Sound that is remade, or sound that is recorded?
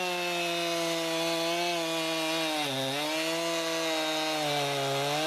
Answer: recorded